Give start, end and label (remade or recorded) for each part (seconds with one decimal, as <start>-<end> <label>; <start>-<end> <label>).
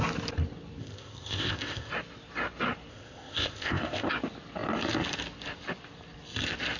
0.0-0.8 recorded; 0.8-1.9 remade; 1.9-2.9 recorded; 2.9-4.1 remade; 4.1-6.8 recorded